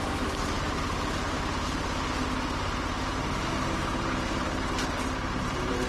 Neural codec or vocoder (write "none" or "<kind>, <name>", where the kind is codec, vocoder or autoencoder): vocoder, BigVGAN v2